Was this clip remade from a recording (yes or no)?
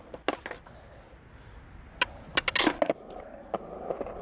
no